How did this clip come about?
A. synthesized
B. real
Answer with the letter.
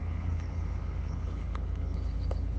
A